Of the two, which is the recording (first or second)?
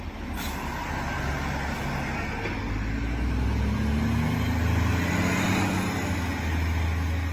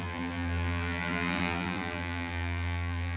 first